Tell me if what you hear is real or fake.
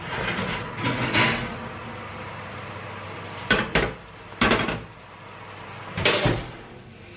real